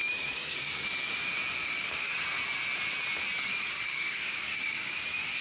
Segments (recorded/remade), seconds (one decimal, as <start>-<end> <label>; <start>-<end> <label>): 0.0-0.8 remade; 0.8-1.6 recorded; 1.6-2.1 remade; 2.1-3.5 recorded; 3.5-5.0 remade; 5.0-5.4 recorded